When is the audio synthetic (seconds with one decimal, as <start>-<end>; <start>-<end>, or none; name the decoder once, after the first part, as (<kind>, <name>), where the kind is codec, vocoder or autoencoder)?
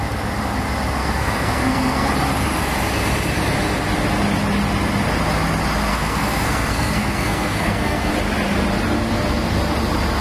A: 1.0-2.1 (codec, SNAC); 5.9-8.1